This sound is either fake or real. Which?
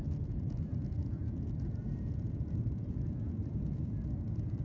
fake